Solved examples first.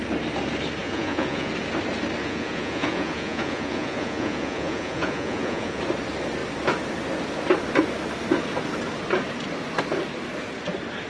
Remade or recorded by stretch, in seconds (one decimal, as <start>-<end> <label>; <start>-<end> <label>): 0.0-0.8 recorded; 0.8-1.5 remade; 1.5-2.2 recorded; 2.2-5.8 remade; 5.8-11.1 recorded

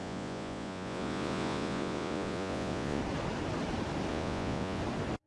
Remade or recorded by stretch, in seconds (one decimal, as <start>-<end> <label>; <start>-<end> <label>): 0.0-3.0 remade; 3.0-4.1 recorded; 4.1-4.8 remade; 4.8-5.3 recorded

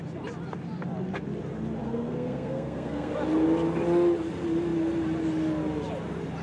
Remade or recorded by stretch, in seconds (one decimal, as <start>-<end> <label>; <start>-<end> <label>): 0.0-1.8 recorded; 1.8-3.1 remade; 3.1-6.4 recorded

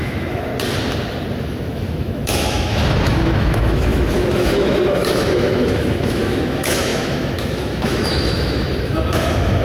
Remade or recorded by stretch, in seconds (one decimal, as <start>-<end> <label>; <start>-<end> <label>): 0.0-0.5 remade; 0.5-1.4 recorded; 1.4-9.6 remade

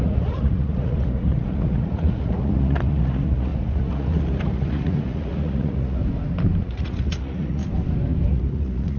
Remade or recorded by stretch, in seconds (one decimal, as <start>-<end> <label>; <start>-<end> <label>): 0.0-6.0 remade; 6.0-6.6 recorded; 6.6-7.6 remade; 7.6-8.3 recorded; 8.3-9.0 remade